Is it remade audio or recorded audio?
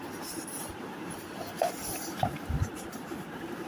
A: remade